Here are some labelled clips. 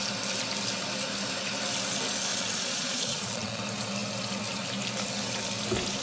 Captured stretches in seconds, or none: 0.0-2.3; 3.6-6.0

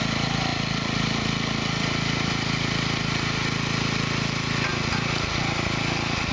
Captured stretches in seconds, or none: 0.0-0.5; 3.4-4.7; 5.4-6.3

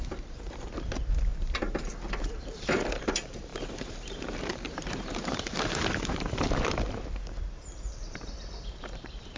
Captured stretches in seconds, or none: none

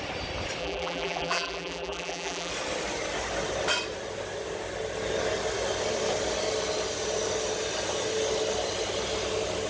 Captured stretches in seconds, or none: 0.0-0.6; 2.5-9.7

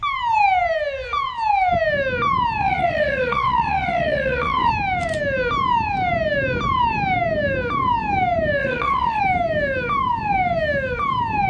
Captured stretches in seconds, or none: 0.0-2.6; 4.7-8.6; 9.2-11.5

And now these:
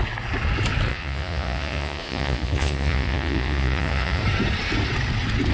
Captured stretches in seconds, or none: 0.0-0.9; 4.2-5.5